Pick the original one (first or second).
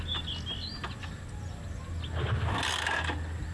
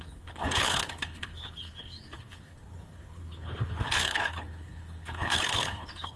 first